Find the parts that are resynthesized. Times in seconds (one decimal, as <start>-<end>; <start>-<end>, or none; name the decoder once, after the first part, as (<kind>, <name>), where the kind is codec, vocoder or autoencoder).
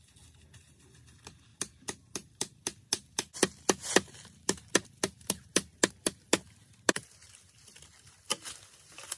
none